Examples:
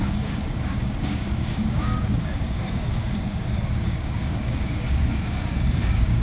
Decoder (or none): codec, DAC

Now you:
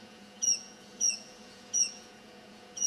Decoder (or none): vocoder, Vocos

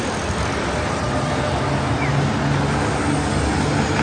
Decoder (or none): none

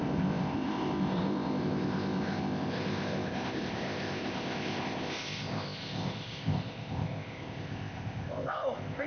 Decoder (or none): codec, ZipCodec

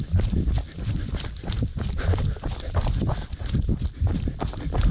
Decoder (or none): none